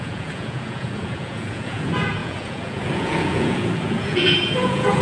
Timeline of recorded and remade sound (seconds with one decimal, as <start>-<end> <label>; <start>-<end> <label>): 0.0-5.0 remade